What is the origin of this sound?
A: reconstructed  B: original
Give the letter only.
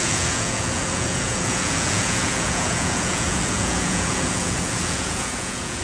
A